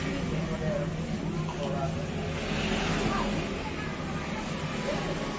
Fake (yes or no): no